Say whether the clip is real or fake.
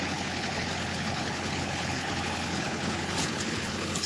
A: fake